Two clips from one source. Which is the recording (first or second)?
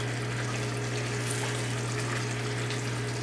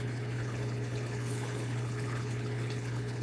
first